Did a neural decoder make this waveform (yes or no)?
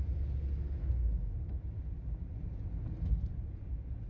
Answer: no